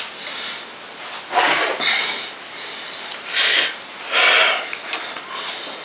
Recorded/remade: recorded